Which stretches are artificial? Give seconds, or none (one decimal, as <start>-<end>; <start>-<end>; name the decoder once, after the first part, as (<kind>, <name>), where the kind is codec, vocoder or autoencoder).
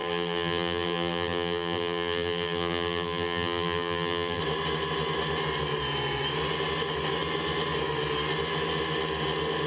0.0-4.4 (vocoder, BigVGAN v2)